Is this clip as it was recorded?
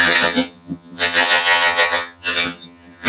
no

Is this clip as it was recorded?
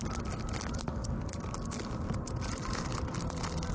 yes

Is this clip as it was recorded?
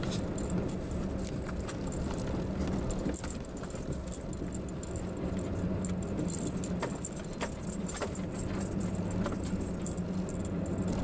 yes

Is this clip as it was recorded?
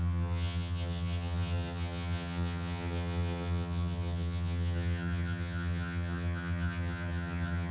no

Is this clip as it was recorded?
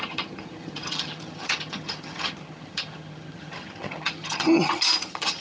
no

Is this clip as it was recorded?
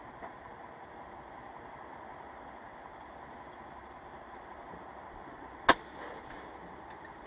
yes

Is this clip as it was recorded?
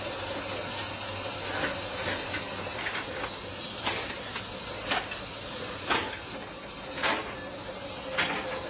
yes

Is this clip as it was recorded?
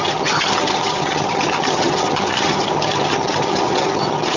no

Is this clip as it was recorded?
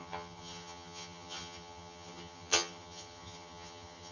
no